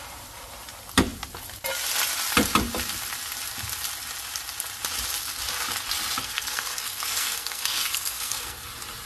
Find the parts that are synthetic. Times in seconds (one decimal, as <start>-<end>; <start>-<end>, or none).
6.2-8.7